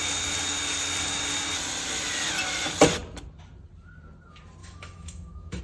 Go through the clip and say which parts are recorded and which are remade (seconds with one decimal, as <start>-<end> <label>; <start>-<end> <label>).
0.0-4.6 recorded; 4.6-5.6 remade